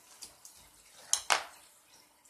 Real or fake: real